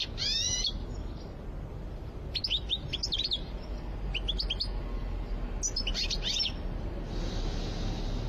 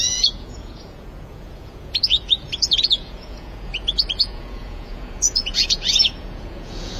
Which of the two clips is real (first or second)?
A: first